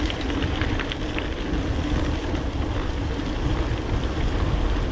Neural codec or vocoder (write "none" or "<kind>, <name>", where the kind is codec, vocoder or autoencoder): none